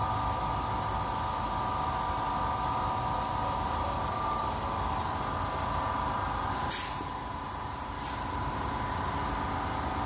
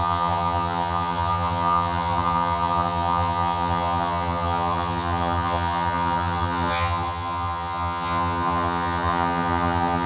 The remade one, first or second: second